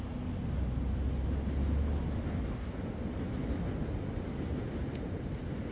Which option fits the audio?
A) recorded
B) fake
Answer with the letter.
A